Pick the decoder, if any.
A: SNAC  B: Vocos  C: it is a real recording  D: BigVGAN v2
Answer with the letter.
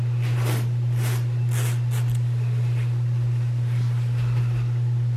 C